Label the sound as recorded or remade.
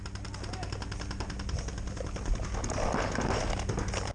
recorded